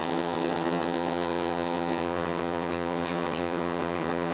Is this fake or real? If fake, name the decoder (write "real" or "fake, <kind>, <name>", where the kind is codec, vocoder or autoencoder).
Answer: fake, vocoder, HiFi-GAN